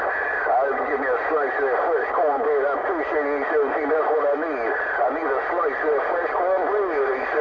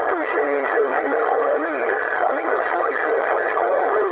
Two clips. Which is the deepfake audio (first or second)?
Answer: second